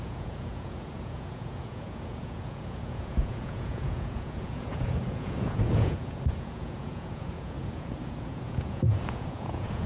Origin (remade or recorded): remade